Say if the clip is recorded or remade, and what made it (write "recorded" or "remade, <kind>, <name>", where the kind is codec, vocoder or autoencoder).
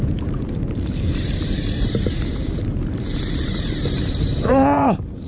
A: remade, vocoder, BigVGAN v2